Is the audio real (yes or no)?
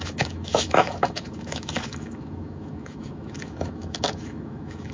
no